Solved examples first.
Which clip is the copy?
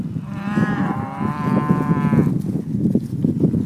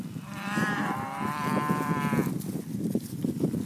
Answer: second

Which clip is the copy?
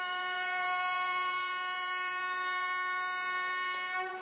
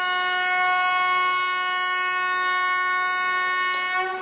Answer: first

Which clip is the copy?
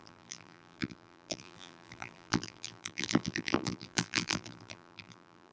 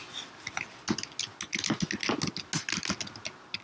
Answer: first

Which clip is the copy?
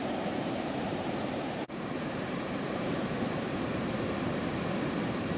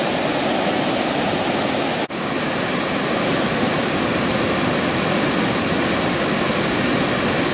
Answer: first